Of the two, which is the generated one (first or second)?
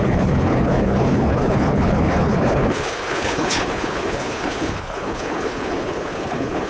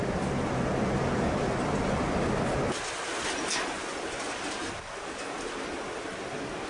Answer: first